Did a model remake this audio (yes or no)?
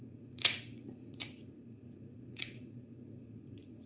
yes